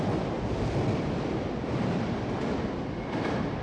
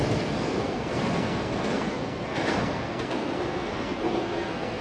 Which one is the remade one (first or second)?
second